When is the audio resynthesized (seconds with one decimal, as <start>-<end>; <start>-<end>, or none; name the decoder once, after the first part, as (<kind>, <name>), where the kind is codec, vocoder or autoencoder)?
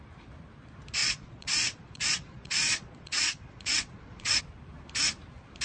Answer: 1.0-4.4 (vocoder, Vocos)